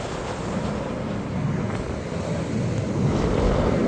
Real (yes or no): yes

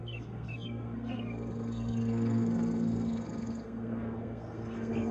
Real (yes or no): no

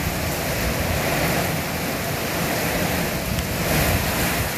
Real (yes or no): yes